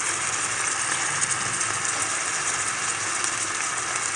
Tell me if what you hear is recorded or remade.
recorded